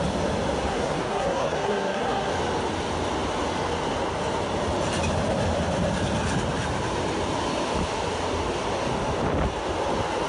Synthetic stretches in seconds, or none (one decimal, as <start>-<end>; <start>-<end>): 0.7-2.3